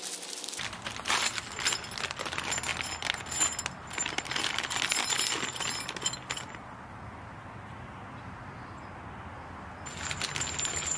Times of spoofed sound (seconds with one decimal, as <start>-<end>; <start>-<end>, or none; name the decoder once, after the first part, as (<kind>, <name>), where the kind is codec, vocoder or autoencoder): none